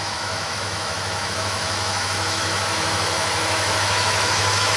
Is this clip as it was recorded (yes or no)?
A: no